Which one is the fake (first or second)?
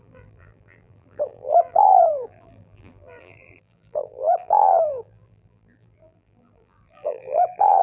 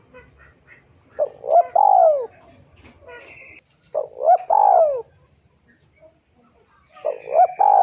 first